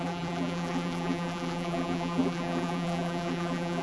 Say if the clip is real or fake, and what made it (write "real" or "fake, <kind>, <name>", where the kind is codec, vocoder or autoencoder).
fake, vocoder, BigVGAN v2